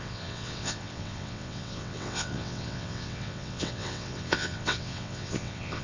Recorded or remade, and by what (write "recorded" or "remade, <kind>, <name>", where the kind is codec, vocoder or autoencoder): remade, vocoder, WaveNeXt